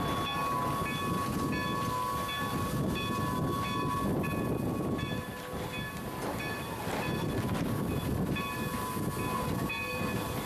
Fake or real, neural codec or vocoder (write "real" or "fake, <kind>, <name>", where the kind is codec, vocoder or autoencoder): real